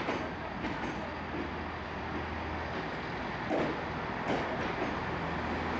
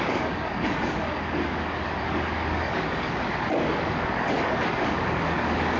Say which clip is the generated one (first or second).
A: second